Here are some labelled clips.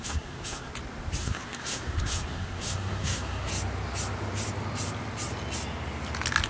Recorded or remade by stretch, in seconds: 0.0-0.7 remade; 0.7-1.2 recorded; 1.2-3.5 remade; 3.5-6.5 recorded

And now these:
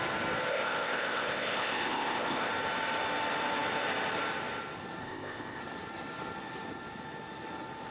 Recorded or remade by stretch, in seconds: 0.0-0.5 recorded; 0.5-2.5 remade; 2.5-5.0 recorded; 5.0-5.6 remade; 5.6-7.9 recorded

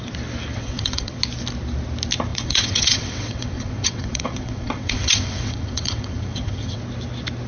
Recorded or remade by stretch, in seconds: 0.0-0.5 recorded; 0.5-1.2 remade; 1.2-2.3 recorded; 2.3-6.8 remade; 6.8-7.5 recorded

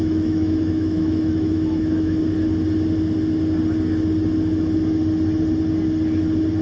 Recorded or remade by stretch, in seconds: 0.0-2.2 remade; 2.2-6.6 recorded

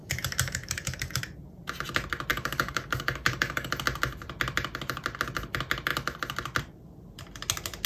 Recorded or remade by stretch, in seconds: 0.0-1.2 remade; 1.2-2.3 recorded; 2.3-3.7 remade; 3.7-7.9 recorded